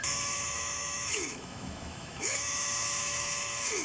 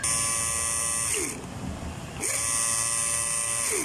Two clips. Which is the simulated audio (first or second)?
first